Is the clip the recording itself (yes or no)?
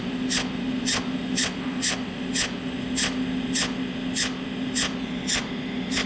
yes